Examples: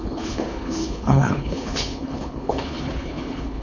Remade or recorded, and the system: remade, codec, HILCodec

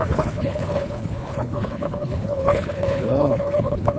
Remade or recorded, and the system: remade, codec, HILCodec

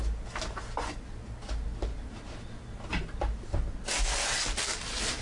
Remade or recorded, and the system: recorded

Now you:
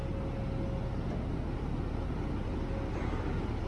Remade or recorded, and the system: recorded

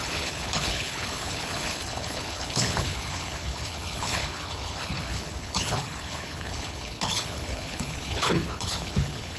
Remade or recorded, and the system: remade, codec, HILCodec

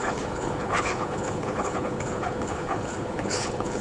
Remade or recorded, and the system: remade, codec, HILCodec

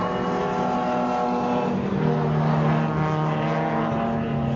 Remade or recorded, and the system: recorded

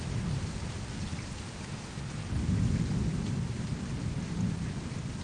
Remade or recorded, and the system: recorded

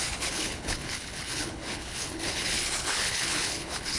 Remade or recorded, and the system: remade, codec, HILCodec